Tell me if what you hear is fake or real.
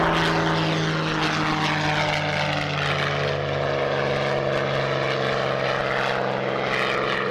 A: real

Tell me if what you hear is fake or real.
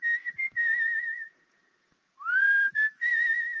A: fake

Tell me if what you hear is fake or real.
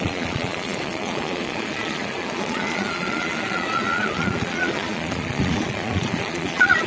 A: fake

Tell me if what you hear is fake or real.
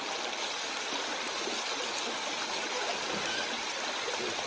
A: real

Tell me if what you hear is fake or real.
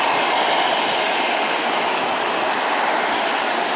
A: real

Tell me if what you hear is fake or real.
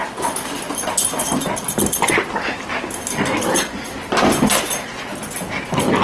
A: real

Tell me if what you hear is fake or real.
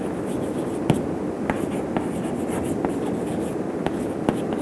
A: real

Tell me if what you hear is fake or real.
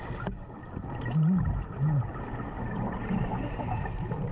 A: real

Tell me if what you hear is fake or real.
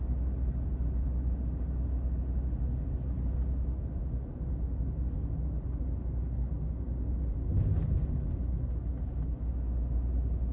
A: real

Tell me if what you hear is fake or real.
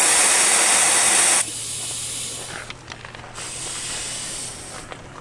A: real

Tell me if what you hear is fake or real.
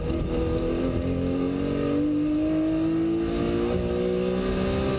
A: real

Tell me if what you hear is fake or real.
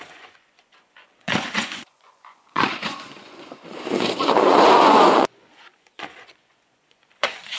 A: fake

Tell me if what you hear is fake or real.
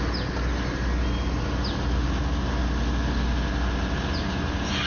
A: real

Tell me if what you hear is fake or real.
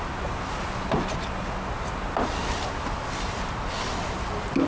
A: real